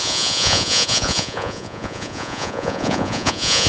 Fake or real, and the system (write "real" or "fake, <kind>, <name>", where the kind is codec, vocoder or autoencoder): fake, vocoder, Vocos